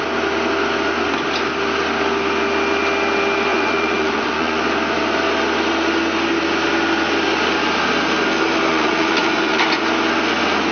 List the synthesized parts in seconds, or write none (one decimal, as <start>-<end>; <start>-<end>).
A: 3.5-4.6; 8.7-9.8